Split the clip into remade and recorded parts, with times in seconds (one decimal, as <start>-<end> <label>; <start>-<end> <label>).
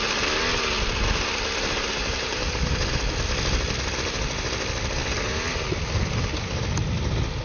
0.0-2.3 recorded; 2.3-3.0 remade; 3.0-7.4 recorded